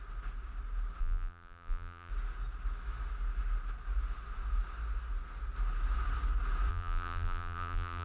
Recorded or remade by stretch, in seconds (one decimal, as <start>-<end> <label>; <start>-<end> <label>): 0.0-1.0 recorded; 1.0-2.1 remade; 2.1-6.7 recorded; 6.7-8.0 remade